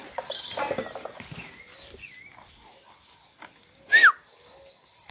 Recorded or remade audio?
recorded